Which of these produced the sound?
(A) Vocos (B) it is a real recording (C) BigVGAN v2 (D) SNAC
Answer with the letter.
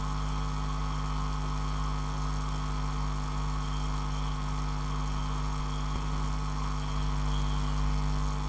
B